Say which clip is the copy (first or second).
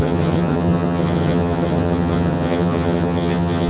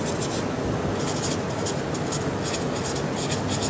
first